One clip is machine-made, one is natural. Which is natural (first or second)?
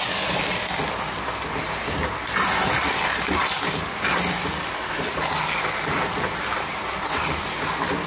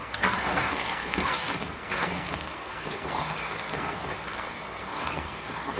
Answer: first